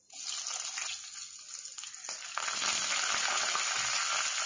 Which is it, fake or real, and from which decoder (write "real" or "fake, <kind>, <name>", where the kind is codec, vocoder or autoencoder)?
real